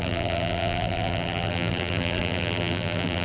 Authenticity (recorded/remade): remade